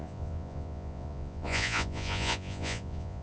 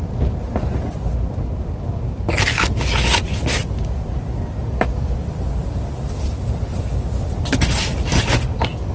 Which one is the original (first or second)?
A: second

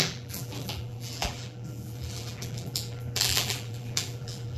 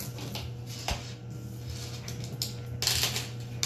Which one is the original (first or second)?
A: second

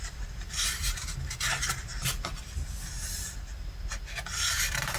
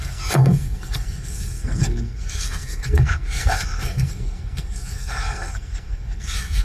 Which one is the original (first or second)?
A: first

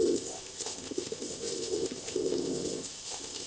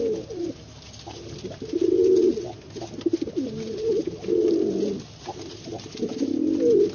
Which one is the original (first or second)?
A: second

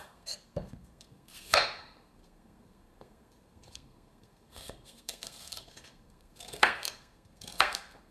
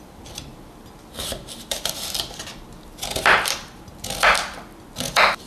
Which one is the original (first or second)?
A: second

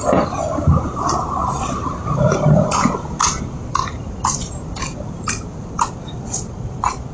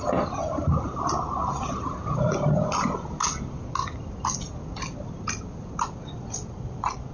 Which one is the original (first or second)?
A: second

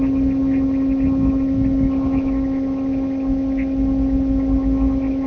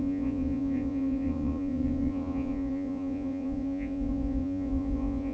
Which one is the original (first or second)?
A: first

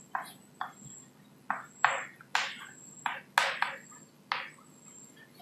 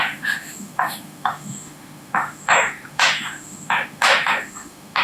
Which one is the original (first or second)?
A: first